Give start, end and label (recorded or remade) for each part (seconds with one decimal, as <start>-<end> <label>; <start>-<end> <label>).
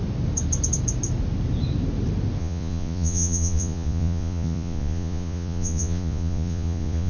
0.0-2.4 recorded; 2.4-7.1 remade